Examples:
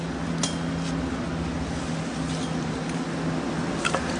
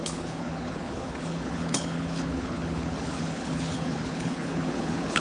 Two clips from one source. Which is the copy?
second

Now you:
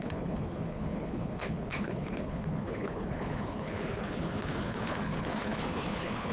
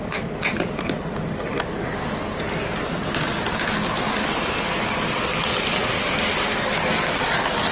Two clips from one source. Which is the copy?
first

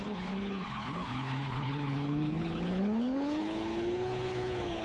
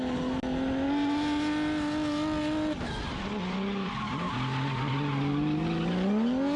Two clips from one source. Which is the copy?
first